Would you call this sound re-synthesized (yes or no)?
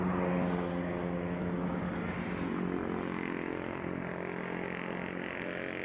no